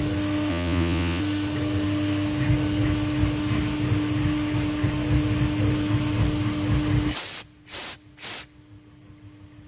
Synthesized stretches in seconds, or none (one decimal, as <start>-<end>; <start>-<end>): 0.5-1.2